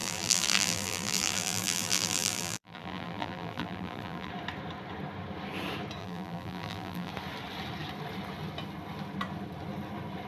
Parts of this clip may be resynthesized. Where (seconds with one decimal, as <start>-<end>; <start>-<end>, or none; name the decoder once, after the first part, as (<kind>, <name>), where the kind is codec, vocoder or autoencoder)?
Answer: 0.0-4.3 (vocoder, BigVGAN v2); 6.0-7.1